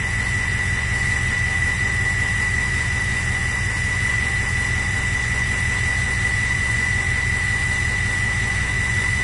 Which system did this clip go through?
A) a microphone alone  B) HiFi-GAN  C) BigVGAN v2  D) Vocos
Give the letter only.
D